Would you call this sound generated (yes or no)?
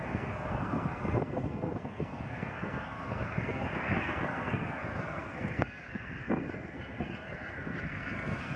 yes